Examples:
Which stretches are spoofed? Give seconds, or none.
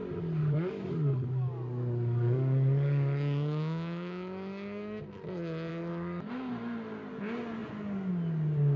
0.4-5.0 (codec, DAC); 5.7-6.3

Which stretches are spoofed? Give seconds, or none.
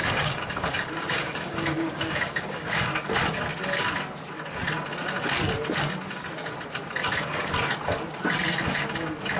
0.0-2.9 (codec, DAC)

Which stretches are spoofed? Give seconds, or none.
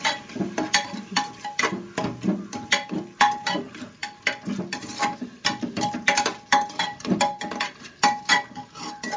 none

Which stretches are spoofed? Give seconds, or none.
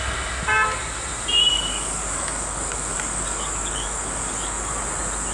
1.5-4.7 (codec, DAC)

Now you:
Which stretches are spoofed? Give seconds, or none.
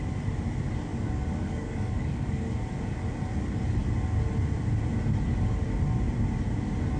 0.9-2.6 (codec, DAC)